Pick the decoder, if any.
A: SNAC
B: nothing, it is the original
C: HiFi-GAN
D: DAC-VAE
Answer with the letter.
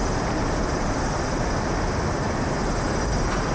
B